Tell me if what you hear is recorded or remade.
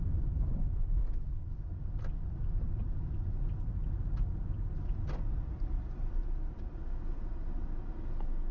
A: recorded